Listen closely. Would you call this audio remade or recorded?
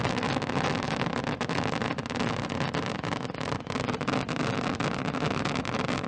recorded